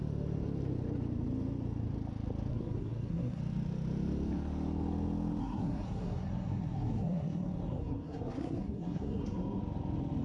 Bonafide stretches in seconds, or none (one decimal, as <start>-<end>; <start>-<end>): 0.0-2.5; 3.4-5.4; 9.6-10.2